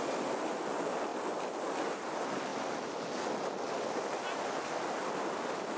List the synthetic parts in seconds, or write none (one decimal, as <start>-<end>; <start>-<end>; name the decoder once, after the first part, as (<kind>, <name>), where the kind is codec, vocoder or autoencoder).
none